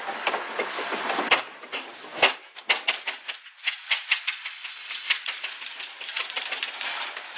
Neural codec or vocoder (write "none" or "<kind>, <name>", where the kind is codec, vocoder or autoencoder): none